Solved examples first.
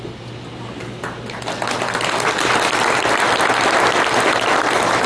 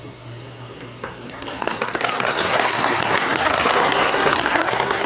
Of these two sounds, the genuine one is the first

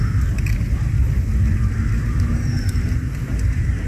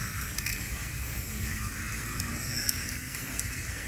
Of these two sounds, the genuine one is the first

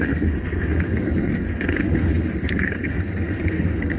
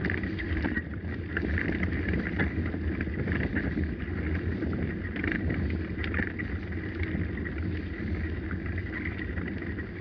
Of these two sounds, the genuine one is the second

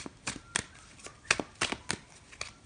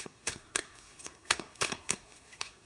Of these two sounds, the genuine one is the first